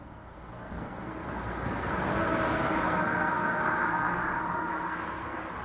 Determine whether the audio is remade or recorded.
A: remade